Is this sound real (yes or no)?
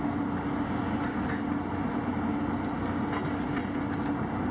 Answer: yes